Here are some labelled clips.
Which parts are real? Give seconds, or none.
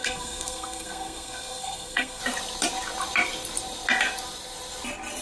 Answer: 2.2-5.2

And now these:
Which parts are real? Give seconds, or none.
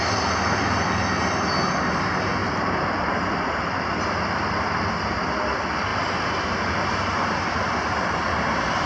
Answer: 0.0-8.9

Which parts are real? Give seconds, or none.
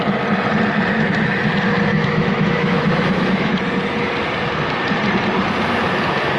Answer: 0.0-1.9; 3.5-6.4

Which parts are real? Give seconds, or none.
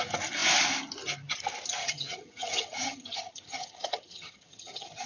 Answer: 0.0-1.8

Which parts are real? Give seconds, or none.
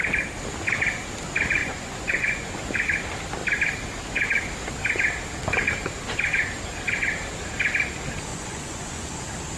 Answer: 0.0-1.6; 2.5-8.3; 9.2-9.6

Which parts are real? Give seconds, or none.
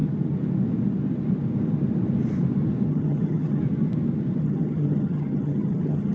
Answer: 0.0-2.9; 3.6-4.4